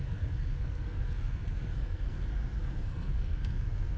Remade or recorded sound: remade